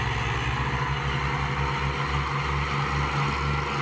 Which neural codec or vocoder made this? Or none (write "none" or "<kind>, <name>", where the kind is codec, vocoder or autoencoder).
none